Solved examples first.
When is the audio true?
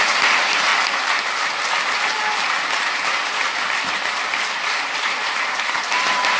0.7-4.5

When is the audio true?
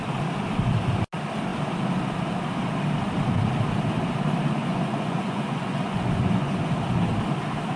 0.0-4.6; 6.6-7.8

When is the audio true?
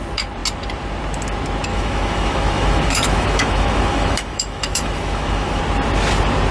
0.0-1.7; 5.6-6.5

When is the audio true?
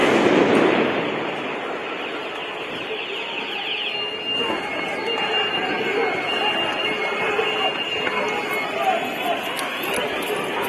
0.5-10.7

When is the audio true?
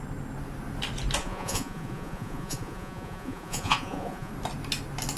0.0-1.2; 4.3-5.2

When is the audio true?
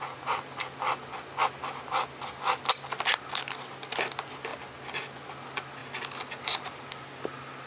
0.0-7.7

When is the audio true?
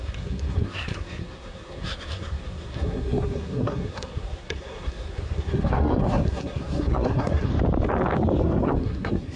7.5-8.4